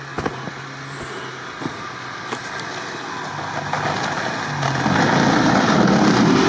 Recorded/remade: recorded